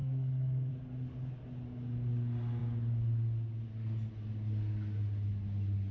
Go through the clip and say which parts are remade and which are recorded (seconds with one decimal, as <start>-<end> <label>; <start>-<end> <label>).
0.0-0.7 remade; 0.7-5.9 recorded